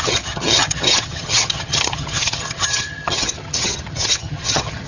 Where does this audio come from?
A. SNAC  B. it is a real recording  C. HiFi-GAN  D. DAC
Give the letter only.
C